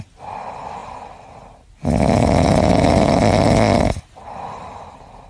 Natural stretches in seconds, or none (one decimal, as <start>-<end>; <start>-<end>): 0.0-5.3